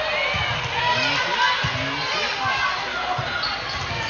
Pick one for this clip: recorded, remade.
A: recorded